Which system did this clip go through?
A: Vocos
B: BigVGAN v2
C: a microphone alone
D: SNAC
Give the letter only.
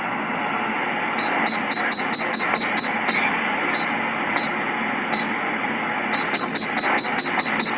C